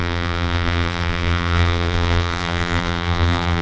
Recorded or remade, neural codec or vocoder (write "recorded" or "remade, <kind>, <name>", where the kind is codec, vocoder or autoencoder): remade, vocoder, BigVGAN v2